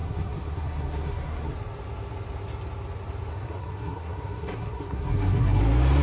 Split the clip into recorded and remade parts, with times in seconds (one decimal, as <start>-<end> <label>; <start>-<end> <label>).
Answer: 0.0-1.5 remade; 1.5-3.3 recorded; 3.3-5.6 remade; 5.6-6.0 recorded